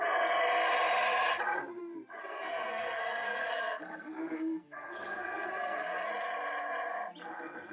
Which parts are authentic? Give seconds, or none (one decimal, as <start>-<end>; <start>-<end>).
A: 0.0-2.2; 6.1-7.7